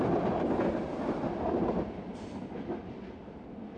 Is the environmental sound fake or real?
real